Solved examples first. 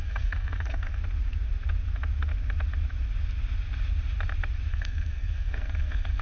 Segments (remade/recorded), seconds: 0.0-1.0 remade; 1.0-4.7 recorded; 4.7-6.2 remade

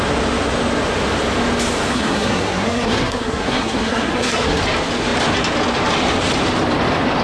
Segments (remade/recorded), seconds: 0.0-1.9 recorded; 1.9-4.6 remade; 4.6-7.2 recorded

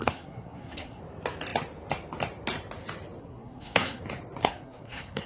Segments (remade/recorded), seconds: 0.0-1.0 remade; 1.0-3.2 recorded; 3.2-4.0 remade; 4.0-4.4 recorded; 4.4-5.3 remade

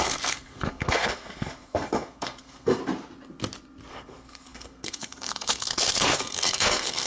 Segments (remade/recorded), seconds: 0.0-2.8 remade; 2.8-3.9 recorded; 3.9-7.1 remade

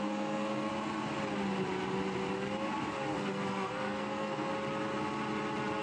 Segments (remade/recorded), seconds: 0.0-0.7 remade; 0.7-3.2 recorded; 3.2-4.5 remade; 4.5-5.8 recorded

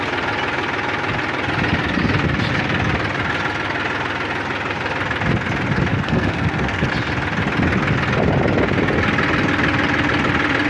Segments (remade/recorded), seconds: 0.0-5.9 recorded; 5.9-6.9 remade; 6.9-10.7 recorded